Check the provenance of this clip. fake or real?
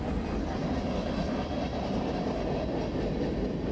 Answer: real